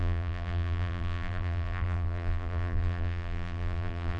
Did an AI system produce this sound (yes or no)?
yes